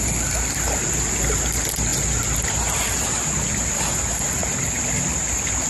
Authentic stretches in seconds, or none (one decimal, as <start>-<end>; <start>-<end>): 0.0-5.7

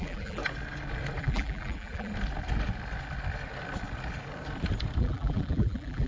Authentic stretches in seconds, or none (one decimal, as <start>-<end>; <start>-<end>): 0.4-1.2; 2.1-5.0

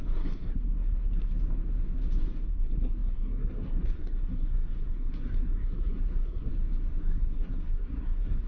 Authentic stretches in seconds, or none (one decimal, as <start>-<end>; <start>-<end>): 1.3-2.5; 6.5-7.0

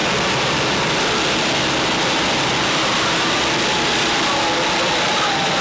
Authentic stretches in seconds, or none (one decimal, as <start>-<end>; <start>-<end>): 0.0-5.6

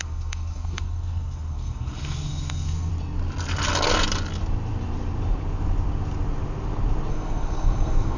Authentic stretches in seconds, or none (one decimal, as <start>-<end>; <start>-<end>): 2.9-7.1

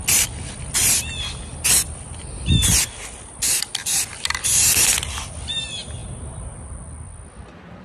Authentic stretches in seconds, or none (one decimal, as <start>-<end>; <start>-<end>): 0.0-7.8

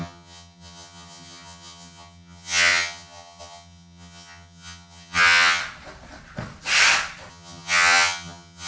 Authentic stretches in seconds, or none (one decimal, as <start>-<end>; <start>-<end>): 5.6-7.3

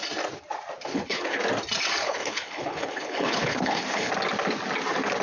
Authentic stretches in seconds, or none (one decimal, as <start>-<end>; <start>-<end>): 0.0-0.9; 1.4-2.0; 4.1-5.2